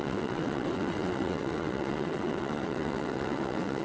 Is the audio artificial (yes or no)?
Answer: yes